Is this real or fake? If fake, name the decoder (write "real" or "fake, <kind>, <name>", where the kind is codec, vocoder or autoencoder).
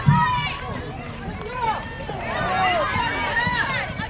fake, vocoder, BigVGAN v2